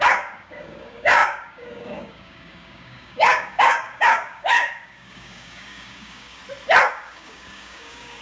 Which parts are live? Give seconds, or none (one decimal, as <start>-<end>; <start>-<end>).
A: 6.4-6.9